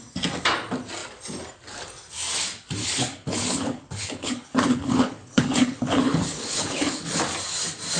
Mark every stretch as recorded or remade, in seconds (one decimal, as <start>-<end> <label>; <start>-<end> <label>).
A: 0.0-2.8 recorded; 2.8-7.2 remade; 7.2-8.0 recorded